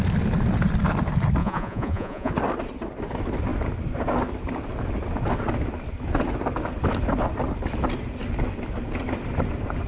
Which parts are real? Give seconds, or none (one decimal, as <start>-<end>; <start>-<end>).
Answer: 0.0-1.4; 2.3-9.9